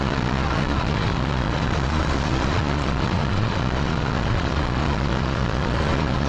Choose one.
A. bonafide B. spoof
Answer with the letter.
B